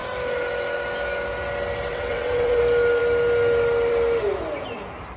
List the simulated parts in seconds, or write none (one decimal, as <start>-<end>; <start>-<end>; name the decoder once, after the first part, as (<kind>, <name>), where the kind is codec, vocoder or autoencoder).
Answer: 1.9-2.6 (vocoder, WaveNeXt)